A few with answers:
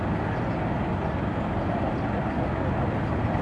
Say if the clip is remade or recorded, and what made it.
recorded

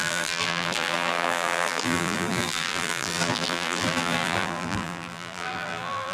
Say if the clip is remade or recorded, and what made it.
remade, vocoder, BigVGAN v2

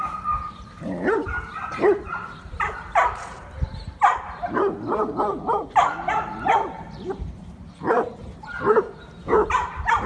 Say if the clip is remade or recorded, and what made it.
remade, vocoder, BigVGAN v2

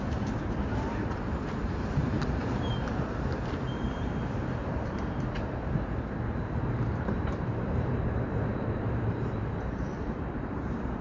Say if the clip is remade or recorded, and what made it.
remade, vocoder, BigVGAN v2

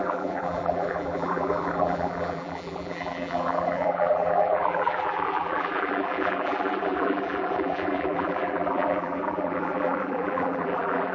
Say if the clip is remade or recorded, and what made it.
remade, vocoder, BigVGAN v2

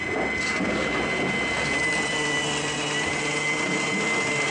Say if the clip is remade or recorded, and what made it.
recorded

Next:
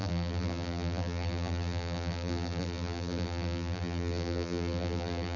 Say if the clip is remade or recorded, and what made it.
remade, vocoder, BigVGAN v2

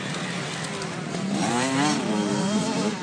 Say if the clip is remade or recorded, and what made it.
recorded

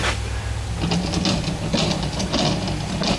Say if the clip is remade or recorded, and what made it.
recorded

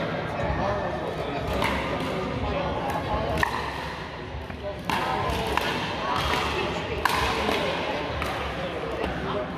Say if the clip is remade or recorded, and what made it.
recorded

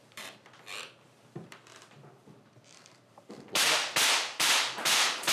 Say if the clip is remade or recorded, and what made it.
remade, vocoder, BigVGAN v2